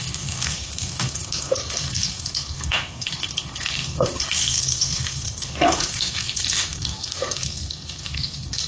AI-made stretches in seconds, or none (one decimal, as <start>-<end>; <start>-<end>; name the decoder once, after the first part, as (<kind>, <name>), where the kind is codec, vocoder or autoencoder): 0.0-8.7 (codec, SNAC)

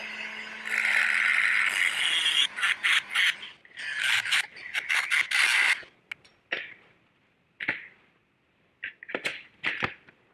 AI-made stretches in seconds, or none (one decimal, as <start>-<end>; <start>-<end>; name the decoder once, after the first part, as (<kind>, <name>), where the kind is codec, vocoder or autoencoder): none

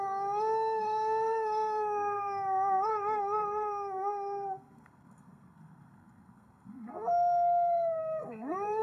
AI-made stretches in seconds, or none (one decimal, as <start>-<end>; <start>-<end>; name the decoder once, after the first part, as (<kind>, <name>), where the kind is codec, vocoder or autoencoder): 0.0-8.8 (codec, SNAC)

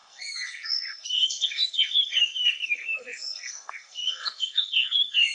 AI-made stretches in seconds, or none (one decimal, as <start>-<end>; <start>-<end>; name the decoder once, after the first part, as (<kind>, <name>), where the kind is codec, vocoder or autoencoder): 0.0-5.3 (codec, SNAC)